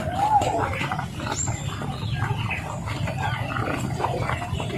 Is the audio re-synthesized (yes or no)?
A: no